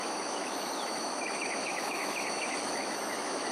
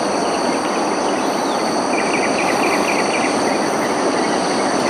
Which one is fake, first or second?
first